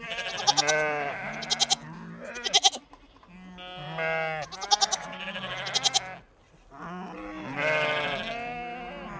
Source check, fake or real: real